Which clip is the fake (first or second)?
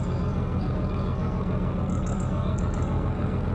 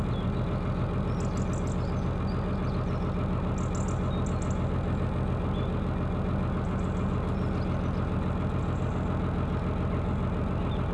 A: first